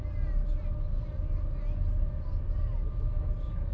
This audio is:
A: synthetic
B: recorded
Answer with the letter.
B